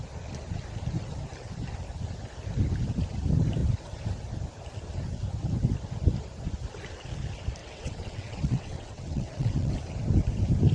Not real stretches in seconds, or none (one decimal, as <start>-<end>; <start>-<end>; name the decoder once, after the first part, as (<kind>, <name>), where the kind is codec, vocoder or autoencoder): 7.6-9.7 (vocoder, WaveNeXt)